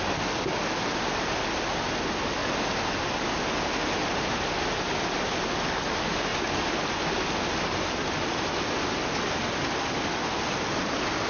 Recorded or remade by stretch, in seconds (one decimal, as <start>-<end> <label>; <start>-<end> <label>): 0.0-11.3 recorded